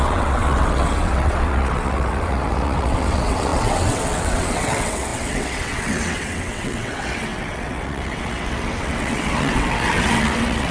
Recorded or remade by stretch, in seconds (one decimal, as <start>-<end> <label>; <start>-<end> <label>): 0.0-10.7 remade